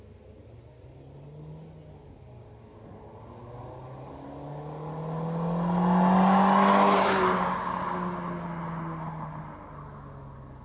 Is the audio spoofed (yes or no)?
no